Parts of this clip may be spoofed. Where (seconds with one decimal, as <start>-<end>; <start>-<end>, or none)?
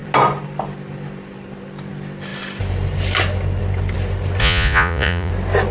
4.4-5.3